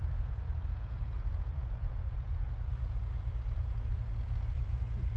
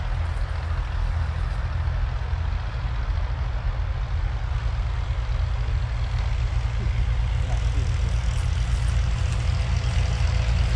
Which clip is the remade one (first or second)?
first